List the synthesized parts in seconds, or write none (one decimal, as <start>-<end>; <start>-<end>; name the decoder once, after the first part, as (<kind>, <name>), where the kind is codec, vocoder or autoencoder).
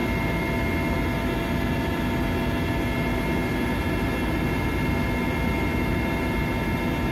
none